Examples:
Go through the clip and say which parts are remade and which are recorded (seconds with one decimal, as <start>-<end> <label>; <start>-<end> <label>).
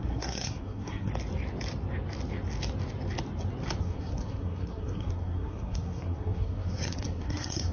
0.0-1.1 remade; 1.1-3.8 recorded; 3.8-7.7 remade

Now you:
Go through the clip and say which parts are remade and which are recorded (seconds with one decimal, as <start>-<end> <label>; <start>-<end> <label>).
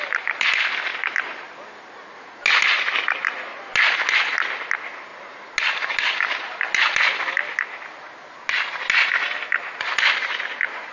0.0-10.9 recorded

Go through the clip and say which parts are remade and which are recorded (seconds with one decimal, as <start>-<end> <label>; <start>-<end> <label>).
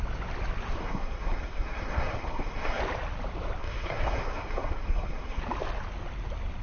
0.0-0.8 recorded; 0.8-2.8 remade; 2.8-3.6 recorded; 3.6-5.4 remade; 5.4-6.6 recorded